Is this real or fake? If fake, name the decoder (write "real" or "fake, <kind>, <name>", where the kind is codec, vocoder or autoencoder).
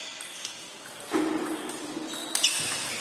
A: real